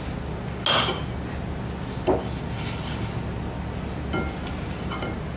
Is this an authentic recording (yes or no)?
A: yes